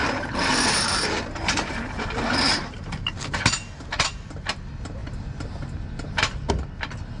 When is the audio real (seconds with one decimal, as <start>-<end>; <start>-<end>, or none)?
4.3-5.0; 6.5-7.2